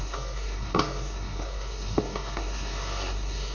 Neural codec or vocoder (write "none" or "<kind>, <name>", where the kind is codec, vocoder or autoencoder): codec, SNAC